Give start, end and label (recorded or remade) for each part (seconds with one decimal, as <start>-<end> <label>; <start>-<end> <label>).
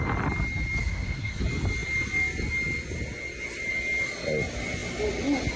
0.0-0.8 recorded; 0.8-1.4 remade; 1.4-5.6 recorded